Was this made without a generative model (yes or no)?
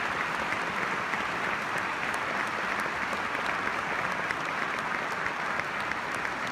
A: yes